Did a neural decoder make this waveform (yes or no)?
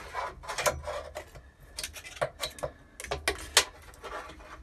no